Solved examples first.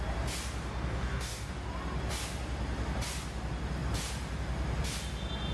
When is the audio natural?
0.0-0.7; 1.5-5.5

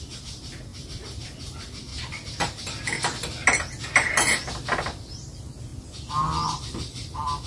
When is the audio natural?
0.0-0.7; 1.2-1.9; 2.7-5.7

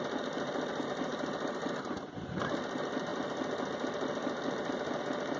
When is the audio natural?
0.0-5.4

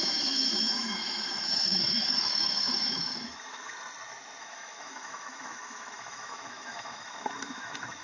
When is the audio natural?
3.7-4.4

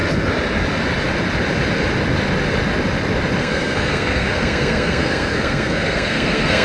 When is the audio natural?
0.0-3.4

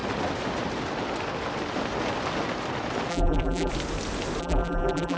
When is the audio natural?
0.0-3.1; 3.7-4.4